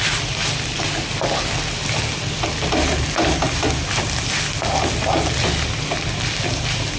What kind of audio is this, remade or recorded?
recorded